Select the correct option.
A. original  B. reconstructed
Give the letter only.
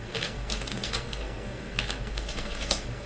B